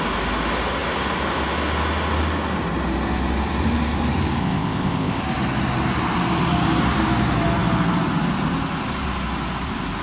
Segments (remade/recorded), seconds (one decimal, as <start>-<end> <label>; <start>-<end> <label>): 0.0-4.4 recorded; 4.4-5.2 remade; 5.2-10.0 recorded